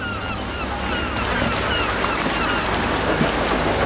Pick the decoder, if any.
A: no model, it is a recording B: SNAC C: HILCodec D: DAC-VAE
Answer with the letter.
A